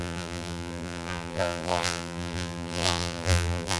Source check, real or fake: fake